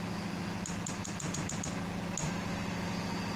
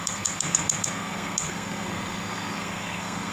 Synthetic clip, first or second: second